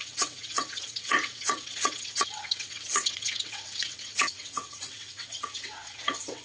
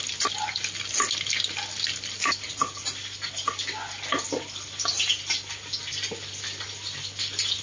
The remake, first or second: first